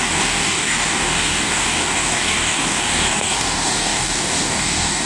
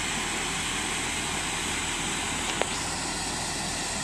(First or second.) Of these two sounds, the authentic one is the second